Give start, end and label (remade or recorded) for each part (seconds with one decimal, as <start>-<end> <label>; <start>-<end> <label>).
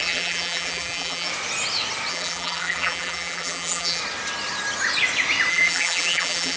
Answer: 0.0-1.3 remade; 1.3-2.1 recorded; 2.1-4.0 remade; 4.0-5.5 recorded; 5.5-6.6 remade